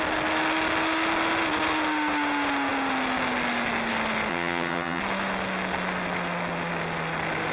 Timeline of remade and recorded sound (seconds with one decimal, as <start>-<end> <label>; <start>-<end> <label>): 0.0-4.3 recorded; 4.3-5.0 remade; 5.0-7.5 recorded

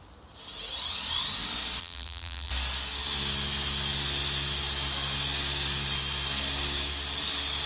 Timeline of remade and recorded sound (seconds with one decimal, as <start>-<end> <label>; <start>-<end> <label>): 0.0-1.8 recorded; 1.8-2.5 remade; 2.5-7.7 recorded

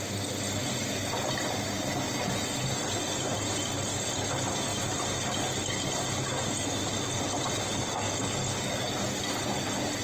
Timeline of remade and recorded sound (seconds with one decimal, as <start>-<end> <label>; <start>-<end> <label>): 0.0-10.0 recorded